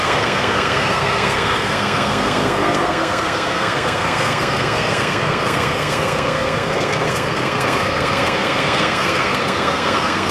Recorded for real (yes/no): no